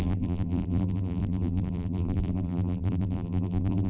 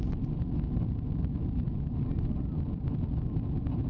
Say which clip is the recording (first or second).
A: second